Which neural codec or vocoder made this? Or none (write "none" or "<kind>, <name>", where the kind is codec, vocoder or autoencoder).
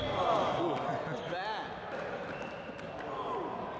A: none